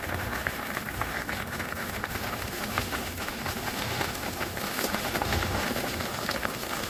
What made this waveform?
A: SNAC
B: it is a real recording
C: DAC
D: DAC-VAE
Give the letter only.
D